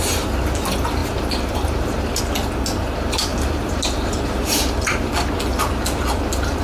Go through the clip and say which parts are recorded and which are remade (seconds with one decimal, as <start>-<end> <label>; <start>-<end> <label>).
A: 0.0-1.0 recorded; 1.0-2.2 remade; 2.2-3.3 recorded; 3.3-5.1 remade; 5.1-6.6 recorded